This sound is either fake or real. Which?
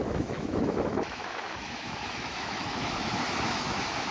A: fake